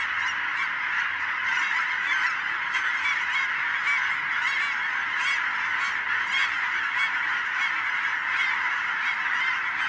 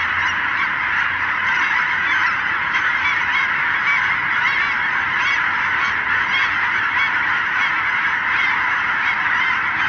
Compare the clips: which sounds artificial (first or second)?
second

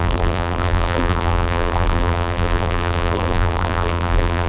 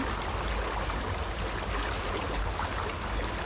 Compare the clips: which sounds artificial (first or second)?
first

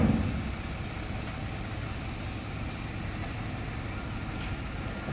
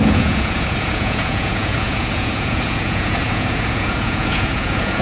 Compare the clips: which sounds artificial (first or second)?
second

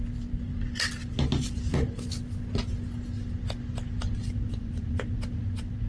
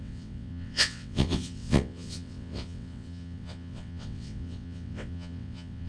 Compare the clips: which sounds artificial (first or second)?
second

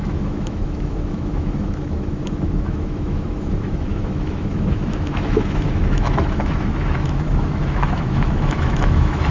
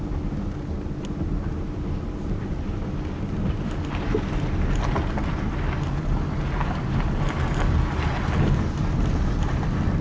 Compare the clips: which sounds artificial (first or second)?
first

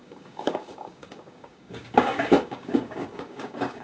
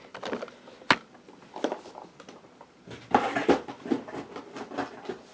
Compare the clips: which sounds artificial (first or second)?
first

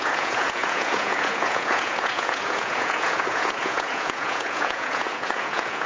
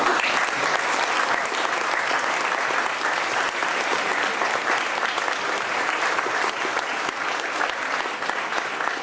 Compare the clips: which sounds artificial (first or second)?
first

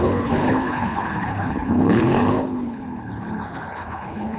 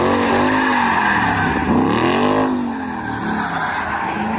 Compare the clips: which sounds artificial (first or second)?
first